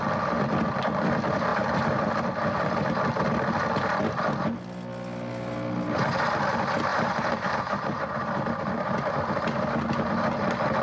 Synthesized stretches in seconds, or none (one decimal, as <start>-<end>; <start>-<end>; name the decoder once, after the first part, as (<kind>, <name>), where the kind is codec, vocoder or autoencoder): 1.5-2.0 (vocoder, BigVGAN v2); 6.9-9.1